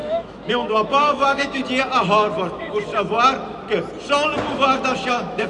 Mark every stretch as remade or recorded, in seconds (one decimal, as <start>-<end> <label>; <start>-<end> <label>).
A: 0.0-1.6 remade; 1.6-2.5 recorded; 2.5-2.9 remade; 2.9-5.1 recorded; 5.1-5.5 remade

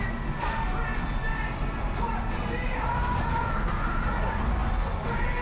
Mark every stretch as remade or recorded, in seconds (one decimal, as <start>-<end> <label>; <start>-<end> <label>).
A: 0.0-5.4 recorded

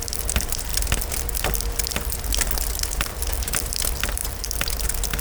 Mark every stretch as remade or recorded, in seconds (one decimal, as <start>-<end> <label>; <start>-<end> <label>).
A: 0.0-5.2 recorded

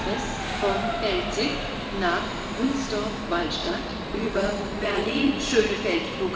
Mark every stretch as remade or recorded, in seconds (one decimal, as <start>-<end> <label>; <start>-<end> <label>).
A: 0.0-3.6 recorded; 3.6-5.7 remade; 5.7-6.4 recorded